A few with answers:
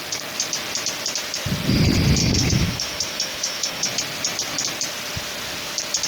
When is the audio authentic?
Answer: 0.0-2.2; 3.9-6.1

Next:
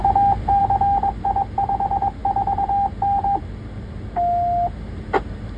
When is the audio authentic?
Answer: 0.0-5.6

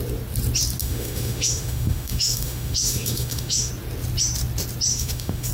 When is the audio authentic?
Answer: 0.0-0.8; 3.7-4.9